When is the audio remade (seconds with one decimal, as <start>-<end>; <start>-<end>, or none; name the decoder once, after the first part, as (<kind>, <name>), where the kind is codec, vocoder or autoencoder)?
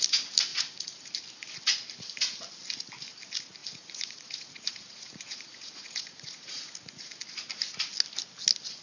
0.5-1.1 (vocoder, Vocos); 3.6-7.2